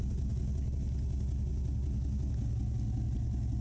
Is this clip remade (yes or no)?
no